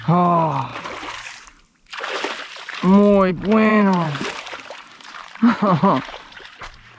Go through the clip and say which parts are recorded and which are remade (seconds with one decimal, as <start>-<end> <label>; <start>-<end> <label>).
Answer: 0.0-3.7 recorded; 3.7-7.0 remade

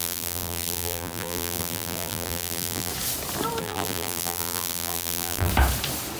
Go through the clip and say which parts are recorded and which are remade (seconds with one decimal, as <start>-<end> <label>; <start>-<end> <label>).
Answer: 0.0-2.9 remade; 2.9-3.6 recorded; 3.6-5.5 remade; 5.5-6.2 recorded

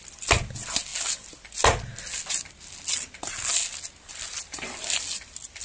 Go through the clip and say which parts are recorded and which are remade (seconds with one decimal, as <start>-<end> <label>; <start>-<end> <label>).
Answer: 0.0-5.6 recorded

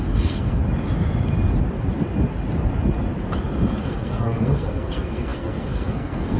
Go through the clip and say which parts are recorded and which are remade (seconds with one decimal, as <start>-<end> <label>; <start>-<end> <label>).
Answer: 0.0-0.6 remade; 0.6-3.8 recorded; 3.8-6.4 remade